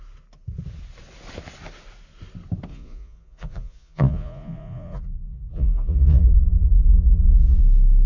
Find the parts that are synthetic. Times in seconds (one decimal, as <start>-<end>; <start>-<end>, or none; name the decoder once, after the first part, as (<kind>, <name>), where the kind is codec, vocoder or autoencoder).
2.7-7.6 (vocoder, Vocos)